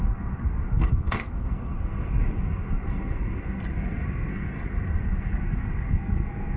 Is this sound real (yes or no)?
no